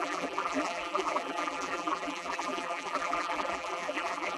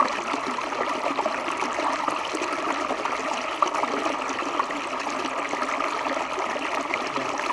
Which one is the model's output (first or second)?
first